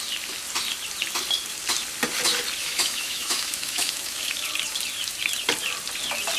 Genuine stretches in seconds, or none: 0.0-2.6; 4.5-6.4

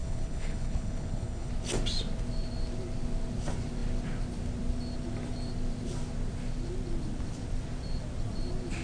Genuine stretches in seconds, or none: 1.5-8.8

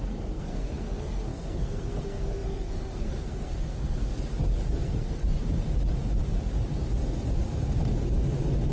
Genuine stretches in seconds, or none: 4.1-4.7; 5.2-8.7

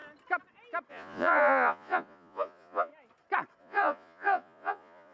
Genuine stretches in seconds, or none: 0.0-0.9; 2.9-3.6

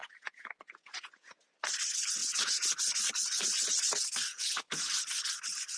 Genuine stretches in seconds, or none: 1.4-2.2; 2.7-4.3; 4.9-5.8